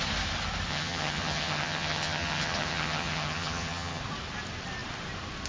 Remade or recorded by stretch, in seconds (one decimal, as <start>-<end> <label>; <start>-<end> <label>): 0.0-0.7 recorded; 0.7-4.0 remade; 4.0-5.5 recorded